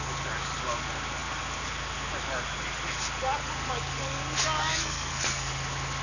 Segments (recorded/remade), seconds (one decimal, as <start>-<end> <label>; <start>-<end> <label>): 0.0-4.7 recorded; 4.7-5.5 remade; 5.5-6.0 recorded